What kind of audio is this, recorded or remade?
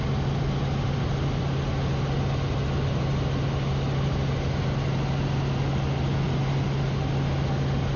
recorded